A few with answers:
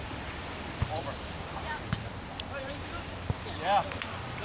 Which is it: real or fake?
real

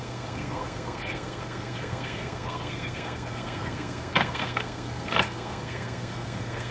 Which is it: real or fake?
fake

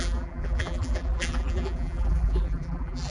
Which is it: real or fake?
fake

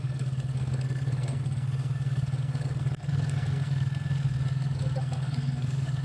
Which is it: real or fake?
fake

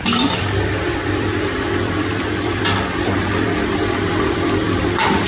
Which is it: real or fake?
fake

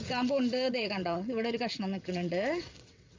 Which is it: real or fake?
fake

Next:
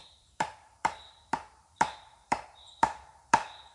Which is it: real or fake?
fake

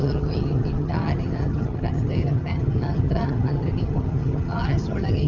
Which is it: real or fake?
fake